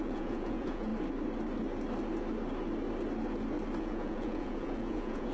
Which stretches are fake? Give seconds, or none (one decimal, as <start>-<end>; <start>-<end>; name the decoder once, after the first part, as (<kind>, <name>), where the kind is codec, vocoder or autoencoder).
0.0-0.9 (vocoder, Vocos); 3.8-5.3